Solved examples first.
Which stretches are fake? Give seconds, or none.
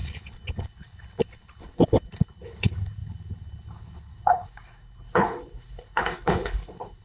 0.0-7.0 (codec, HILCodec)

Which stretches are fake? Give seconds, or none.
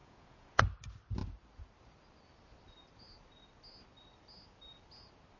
0.0-0.6 (vocoder, Vocos)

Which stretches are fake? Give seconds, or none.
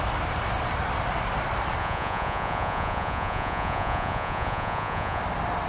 1.8-5.2 (vocoder, Vocos)